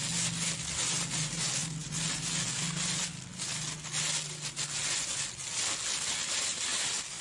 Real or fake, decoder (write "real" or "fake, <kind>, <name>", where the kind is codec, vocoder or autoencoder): real